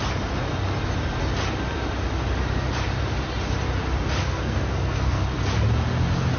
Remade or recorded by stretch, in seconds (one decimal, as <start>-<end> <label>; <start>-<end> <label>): 0.0-4.2 recorded; 4.2-5.4 remade; 5.4-6.4 recorded